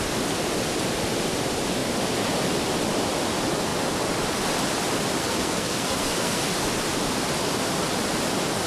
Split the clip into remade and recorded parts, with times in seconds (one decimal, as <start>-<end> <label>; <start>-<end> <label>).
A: 0.0-5.2 recorded; 5.2-6.5 remade; 6.5-8.7 recorded